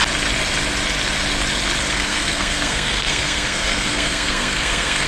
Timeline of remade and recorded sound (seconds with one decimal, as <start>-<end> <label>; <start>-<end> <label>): 0.0-1.9 recorded; 1.9-5.1 remade